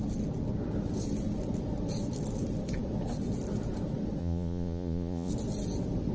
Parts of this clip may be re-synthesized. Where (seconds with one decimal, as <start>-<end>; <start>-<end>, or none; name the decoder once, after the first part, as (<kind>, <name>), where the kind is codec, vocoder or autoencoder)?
4.2-5.3 (vocoder, Vocos)

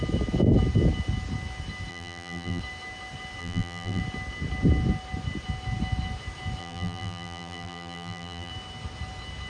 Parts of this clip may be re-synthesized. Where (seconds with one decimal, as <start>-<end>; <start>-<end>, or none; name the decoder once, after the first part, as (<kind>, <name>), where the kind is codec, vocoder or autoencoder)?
1.9-2.6 (vocoder, BigVGAN v2); 3.4-4.0; 6.6-8.5